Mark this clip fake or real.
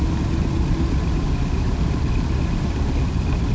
real